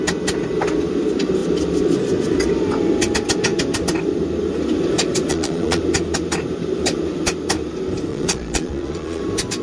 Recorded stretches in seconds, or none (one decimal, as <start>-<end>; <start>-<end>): 0.0-5.3; 5.8-8.1; 9.2-9.6